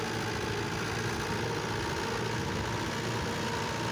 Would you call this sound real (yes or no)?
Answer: yes